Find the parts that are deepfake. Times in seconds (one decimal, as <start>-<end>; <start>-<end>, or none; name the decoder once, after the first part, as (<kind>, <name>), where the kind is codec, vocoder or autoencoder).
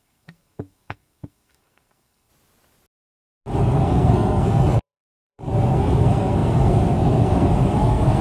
0.0-2.3 (codec, SNAC); 3.6-8.2